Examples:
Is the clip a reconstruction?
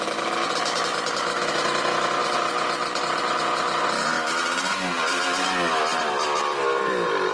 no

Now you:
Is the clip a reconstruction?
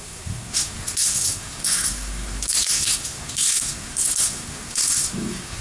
yes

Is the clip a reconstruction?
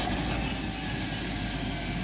no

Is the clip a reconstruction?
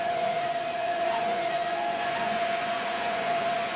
yes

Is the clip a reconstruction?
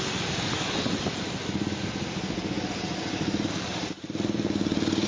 no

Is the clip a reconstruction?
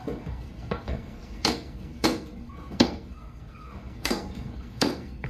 yes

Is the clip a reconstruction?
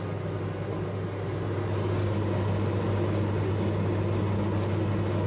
no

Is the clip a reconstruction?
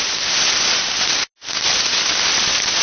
no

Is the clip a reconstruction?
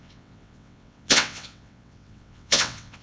yes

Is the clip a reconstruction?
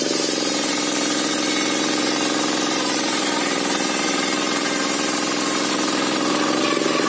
yes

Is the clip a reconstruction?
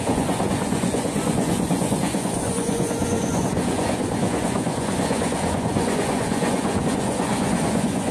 yes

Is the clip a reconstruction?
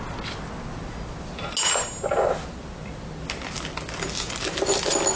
no